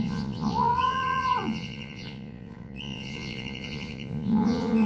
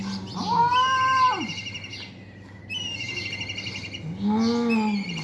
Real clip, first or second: second